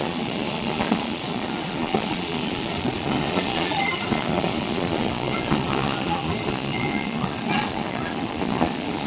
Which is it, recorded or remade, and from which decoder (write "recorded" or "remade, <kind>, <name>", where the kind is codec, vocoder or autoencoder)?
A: remade, vocoder, Vocos